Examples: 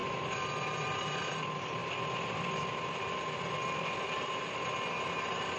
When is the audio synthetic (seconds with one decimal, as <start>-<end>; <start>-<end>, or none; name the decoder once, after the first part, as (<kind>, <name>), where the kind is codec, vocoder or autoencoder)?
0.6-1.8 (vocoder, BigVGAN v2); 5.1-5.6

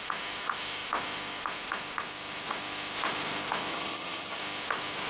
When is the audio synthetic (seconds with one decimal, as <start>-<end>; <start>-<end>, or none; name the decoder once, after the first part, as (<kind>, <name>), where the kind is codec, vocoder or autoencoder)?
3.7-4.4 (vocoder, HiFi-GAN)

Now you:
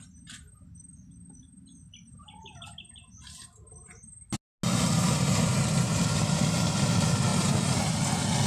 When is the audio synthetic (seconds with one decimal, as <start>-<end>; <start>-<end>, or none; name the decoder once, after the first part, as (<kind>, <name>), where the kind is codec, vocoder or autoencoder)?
none

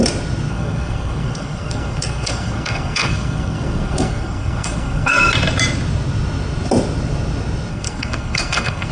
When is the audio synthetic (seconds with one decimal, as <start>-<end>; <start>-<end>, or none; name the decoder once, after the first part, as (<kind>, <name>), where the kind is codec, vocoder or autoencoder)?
0.5-5.3 (codec, SNAC); 7.7-8.9